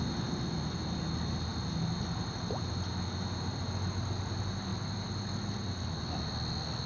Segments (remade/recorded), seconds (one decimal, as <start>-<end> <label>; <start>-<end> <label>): 0.0-6.9 recorded